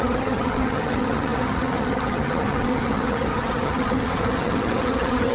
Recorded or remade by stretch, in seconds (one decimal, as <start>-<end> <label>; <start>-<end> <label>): 0.0-5.3 remade